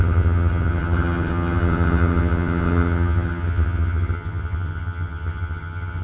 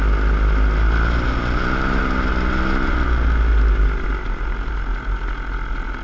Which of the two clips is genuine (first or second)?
second